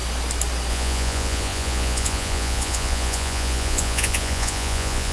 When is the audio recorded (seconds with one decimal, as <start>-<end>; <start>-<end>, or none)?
0.0-0.7